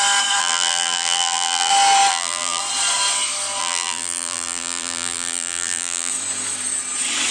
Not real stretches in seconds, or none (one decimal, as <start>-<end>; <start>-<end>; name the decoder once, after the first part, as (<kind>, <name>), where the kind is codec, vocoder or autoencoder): 0.4-1.7 (vocoder, BigVGAN v2); 2.1-2.6; 3.6-6.1